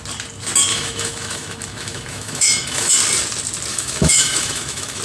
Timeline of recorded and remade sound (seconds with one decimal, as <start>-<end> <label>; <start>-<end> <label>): 0.0-0.7 recorded; 0.7-2.9 remade; 2.9-3.7 recorded; 3.7-5.0 remade